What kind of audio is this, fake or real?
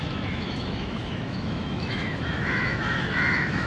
fake